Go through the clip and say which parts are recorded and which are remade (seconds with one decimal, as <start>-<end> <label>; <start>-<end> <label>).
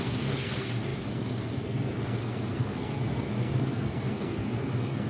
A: 0.0-5.1 remade